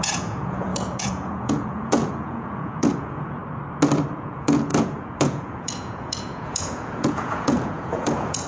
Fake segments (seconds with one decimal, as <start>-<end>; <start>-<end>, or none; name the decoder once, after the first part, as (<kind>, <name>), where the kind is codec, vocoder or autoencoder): 0.0-3.4 (vocoder, Vocos); 4.1-8.5